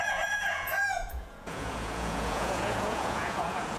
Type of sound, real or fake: fake